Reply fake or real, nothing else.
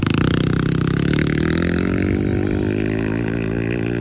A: real